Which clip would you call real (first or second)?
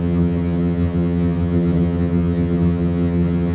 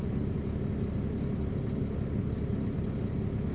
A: second